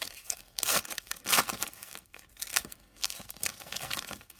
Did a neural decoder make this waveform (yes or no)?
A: yes